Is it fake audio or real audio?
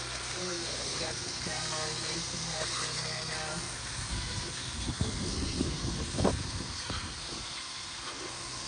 fake